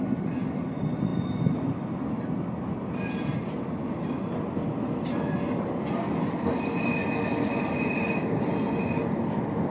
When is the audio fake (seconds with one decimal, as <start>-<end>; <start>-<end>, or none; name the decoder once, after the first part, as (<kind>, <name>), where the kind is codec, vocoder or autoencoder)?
none